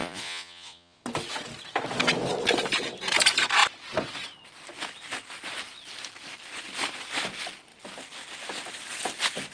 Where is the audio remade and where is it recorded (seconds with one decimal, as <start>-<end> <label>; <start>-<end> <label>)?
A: 0.0-1.0 remade; 1.0-9.5 recorded